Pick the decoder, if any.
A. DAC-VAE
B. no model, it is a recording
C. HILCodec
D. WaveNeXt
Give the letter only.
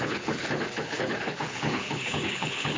C